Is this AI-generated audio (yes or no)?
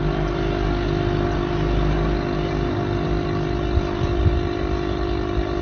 no